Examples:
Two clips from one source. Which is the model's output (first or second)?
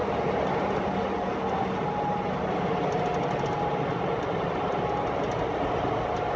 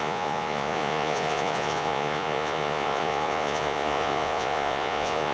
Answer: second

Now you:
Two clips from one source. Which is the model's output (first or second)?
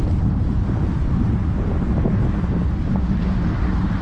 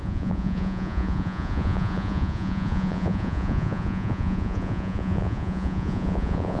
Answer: second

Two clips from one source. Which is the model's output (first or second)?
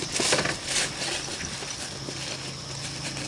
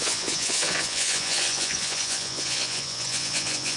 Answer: second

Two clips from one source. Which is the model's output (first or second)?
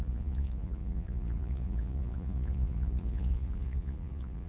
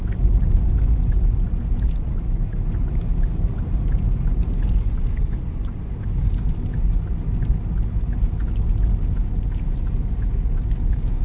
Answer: first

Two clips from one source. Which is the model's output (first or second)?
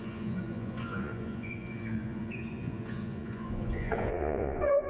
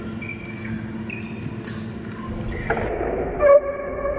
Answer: first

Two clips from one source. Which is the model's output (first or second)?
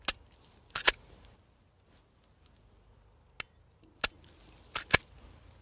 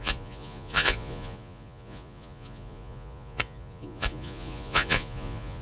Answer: second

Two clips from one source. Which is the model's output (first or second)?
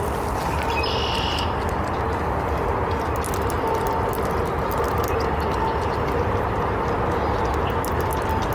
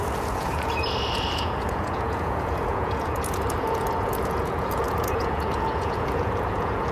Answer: second